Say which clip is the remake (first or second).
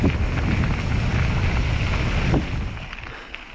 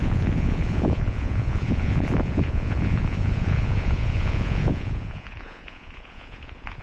second